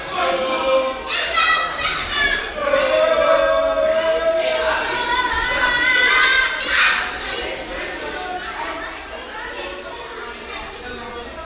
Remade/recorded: recorded